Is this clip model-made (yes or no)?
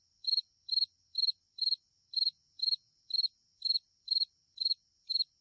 yes